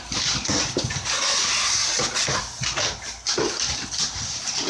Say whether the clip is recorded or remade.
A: recorded